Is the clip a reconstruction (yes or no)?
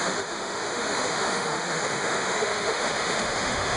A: yes